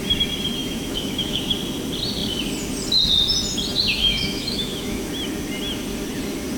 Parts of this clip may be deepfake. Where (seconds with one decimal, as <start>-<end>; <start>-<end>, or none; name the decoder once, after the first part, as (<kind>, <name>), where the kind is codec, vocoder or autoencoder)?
0.6-1.4 (autoencoder, DAC-VAE); 4.0-5.1